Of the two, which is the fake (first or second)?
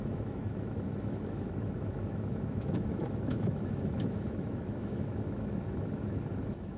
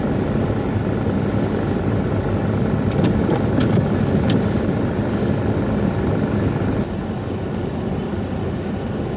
first